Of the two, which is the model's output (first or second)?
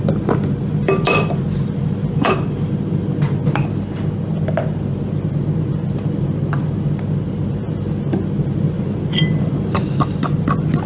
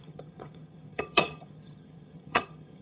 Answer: second